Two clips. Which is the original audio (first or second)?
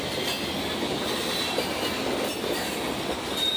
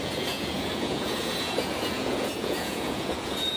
first